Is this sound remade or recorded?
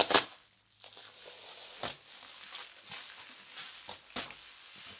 recorded